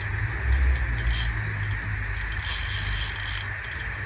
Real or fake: real